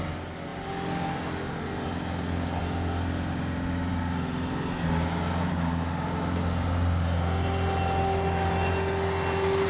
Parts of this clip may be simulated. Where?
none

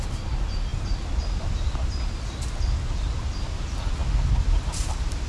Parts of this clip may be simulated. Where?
none

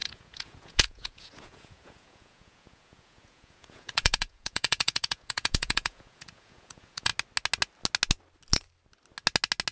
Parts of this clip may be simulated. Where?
0.0-7.1 (vocoder, Vocos)

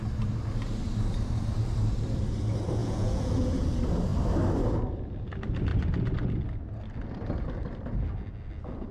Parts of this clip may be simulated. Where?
2.8-3.5 (vocoder, Vocos)

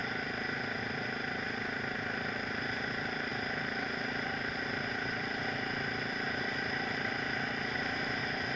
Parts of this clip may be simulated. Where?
none

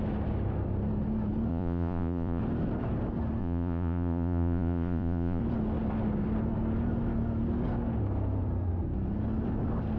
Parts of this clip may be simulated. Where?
1.5-2.4 (vocoder, Vocos); 3.4-5.4

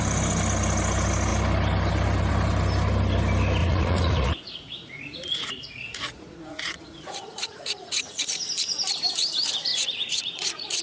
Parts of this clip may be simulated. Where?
3.6-8.2 (vocoder, Vocos); 9.7-10.8

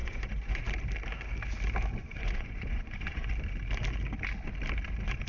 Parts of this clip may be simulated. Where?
0.0-0.6 (vocoder, Vocos); 2.0-3.3